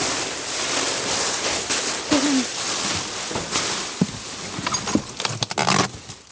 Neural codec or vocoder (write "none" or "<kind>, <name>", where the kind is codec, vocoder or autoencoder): none